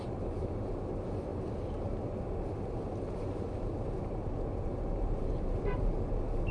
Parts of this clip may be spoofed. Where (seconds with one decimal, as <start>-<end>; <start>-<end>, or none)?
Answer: none